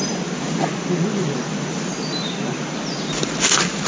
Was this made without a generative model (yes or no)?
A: yes